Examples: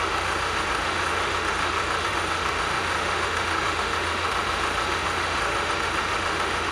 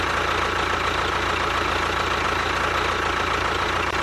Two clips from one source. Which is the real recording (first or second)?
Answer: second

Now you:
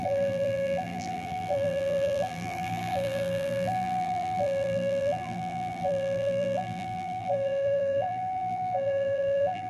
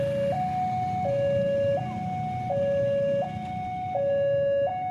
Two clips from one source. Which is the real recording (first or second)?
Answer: second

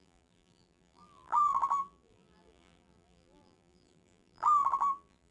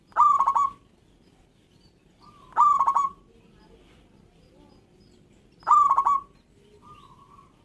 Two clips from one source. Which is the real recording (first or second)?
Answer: second